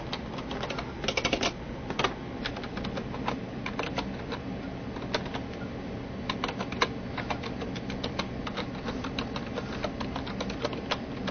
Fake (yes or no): no